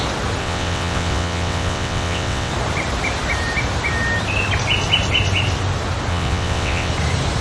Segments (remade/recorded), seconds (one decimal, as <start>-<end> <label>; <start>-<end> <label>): 0.0-0.4 recorded; 0.4-2.5 remade; 2.5-6.1 recorded; 6.1-6.9 remade; 6.9-7.4 recorded